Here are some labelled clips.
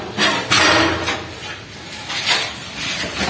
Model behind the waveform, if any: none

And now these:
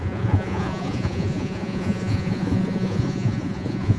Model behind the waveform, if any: vocoder, Vocos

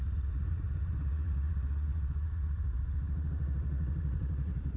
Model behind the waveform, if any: vocoder, Vocos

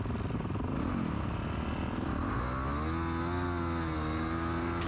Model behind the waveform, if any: none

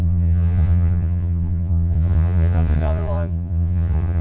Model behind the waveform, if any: vocoder, Vocos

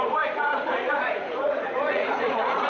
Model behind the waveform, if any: vocoder, Vocos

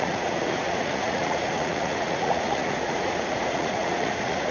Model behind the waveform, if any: vocoder, Vocos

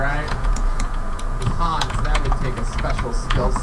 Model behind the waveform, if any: vocoder, Vocos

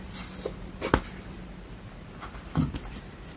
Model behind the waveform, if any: none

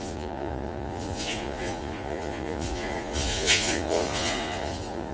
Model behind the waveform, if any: vocoder, Vocos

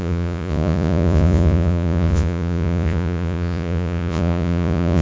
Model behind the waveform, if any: vocoder, Vocos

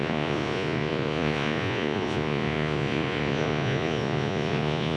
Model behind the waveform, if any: vocoder, Vocos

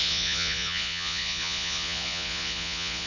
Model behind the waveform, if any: vocoder, Vocos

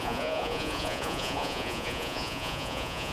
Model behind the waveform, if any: vocoder, Vocos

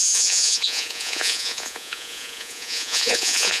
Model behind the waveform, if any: vocoder, Vocos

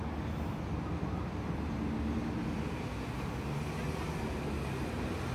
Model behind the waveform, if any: none